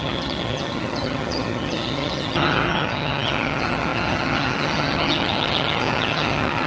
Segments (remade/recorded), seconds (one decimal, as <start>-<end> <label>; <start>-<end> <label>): 0.0-6.7 remade